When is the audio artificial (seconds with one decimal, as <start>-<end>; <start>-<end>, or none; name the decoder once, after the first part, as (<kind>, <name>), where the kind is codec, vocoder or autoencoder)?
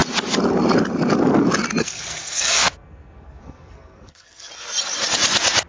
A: 1.8-4.5 (codec, SNAC)